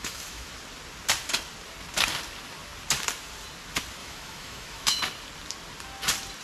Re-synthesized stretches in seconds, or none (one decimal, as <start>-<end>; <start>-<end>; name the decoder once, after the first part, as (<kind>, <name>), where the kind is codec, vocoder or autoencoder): 0.0-0.5 (autoencoder, DAC-VAE); 4.0-5.0